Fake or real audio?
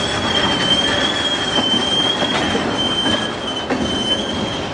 real